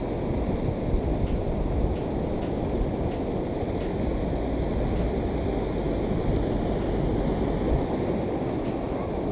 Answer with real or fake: real